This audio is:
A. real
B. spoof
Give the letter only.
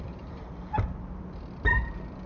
A